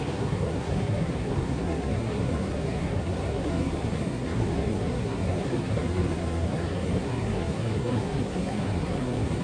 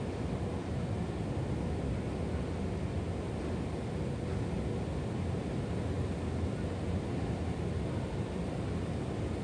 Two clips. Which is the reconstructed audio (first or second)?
first